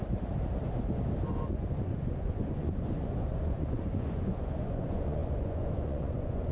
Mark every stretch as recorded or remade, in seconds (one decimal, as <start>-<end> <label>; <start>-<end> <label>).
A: 0.0-1.3 recorded; 1.3-6.5 remade